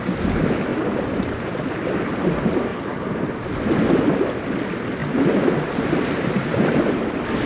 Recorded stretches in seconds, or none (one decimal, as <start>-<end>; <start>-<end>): 0.0-0.7; 1.7-2.7; 3.3-5.0; 7.0-7.5